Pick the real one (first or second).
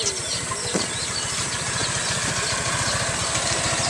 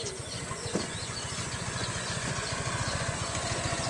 first